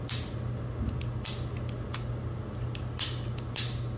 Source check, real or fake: real